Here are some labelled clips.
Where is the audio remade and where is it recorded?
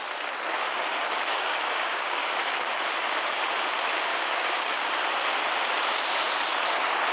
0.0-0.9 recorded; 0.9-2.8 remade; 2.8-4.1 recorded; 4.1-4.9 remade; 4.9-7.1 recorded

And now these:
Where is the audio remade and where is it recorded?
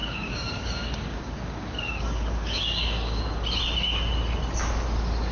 0.0-3.2 remade; 3.2-5.3 recorded